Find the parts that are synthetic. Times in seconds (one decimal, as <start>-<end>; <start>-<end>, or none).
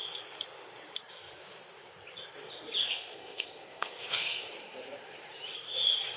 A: 2.8-4.4